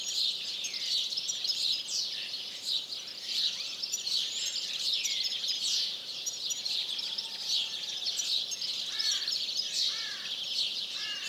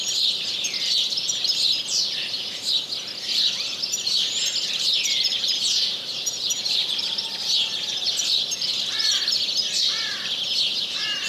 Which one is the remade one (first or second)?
first